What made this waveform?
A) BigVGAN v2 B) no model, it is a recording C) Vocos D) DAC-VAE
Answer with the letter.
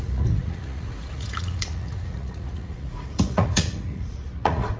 C